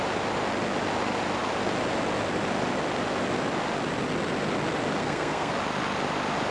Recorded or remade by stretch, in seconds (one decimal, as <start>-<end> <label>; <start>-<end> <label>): 0.0-5.0 recorded; 5.0-5.5 remade; 5.5-6.5 recorded